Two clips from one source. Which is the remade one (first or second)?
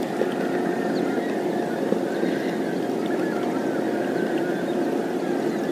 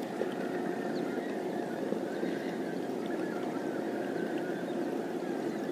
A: second